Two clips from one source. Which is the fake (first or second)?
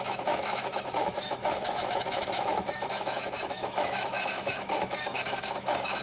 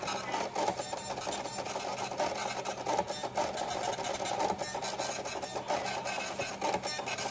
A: first